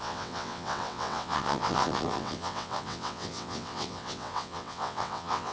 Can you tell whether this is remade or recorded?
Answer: remade